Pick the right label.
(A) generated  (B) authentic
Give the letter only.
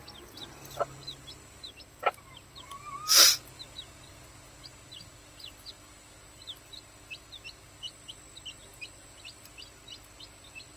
B